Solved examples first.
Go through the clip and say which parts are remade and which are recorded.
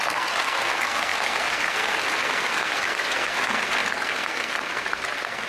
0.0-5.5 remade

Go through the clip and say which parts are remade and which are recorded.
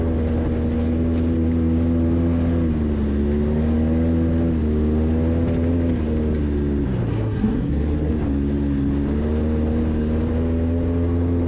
0.0-7.1 recorded; 7.1-8.1 remade; 8.1-11.5 recorded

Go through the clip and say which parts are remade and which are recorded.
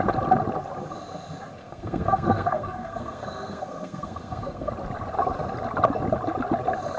0.0-1.6 recorded; 1.6-4.7 remade; 4.7-7.0 recorded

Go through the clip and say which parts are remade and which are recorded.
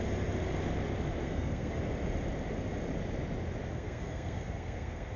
0.0-1.2 recorded; 1.2-1.8 remade; 1.8-3.7 recorded; 3.7-5.2 remade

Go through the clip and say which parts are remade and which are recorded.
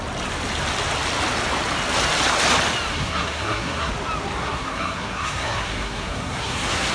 0.0-2.9 recorded; 2.9-3.9 remade; 3.9-4.4 recorded; 4.4-6.9 remade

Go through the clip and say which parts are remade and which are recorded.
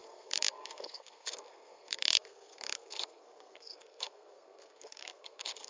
0.0-5.7 remade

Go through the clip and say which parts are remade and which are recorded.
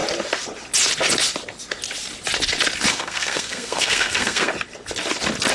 0.0-2.9 recorded; 2.9-4.5 remade; 4.5-5.5 recorded